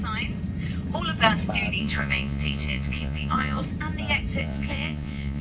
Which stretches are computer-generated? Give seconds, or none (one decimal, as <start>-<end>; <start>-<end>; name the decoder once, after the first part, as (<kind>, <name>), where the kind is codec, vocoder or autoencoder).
1.8-3.6 (vocoder, Vocos); 4.4-5.4

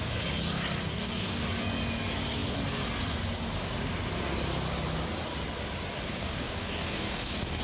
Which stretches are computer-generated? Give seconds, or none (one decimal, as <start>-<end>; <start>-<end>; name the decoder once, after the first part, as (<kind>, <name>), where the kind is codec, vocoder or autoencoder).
0.9-1.4 (codec, DAC); 6.2-7.6

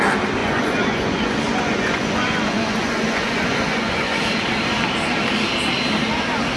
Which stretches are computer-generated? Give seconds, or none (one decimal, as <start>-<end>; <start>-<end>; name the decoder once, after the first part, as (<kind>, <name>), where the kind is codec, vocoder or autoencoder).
0.4-4.2 (vocoder, Vocos)